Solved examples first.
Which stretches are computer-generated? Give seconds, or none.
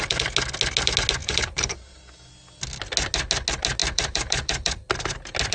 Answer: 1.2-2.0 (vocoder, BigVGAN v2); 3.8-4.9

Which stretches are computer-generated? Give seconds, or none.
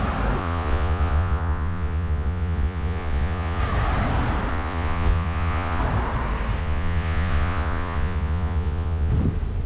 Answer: 0.4-3.6 (vocoder, Vocos); 4.5-5.8; 6.6-9.1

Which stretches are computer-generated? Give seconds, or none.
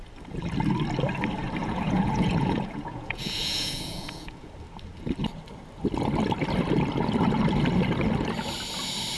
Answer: 1.6-4.5 (vocoder, Vocos)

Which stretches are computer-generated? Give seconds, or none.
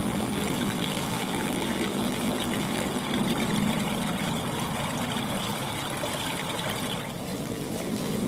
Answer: 0.0-3.0 (vocoder, BigVGAN v2); 7.3-8.3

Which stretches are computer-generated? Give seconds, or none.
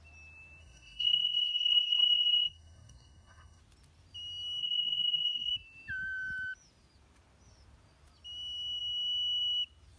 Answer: 0.6-3.6 (codec, SNAC); 4.6-5.5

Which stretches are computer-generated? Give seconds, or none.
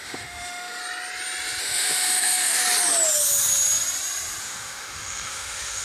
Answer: 0.0-0.8 (autoencoder, DAC-VAE); 1.6-2.6; 4.4-5.8